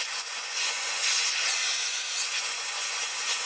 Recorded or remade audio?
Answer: remade